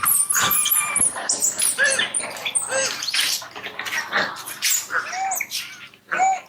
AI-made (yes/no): no